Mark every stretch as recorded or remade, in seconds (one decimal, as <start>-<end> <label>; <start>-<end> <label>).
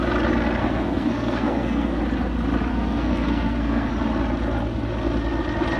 0.0-0.6 recorded; 0.6-2.0 remade; 2.0-2.7 recorded; 2.7-3.9 remade; 3.9-5.8 recorded